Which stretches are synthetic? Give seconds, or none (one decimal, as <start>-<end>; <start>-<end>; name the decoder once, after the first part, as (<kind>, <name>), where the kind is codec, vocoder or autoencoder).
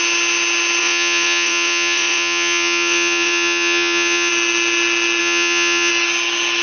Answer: 0.8-4.3 (vocoder, Vocos); 5.2-5.9